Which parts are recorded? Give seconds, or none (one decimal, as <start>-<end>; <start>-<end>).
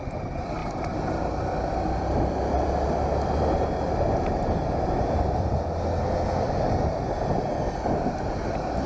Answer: 0.0-8.9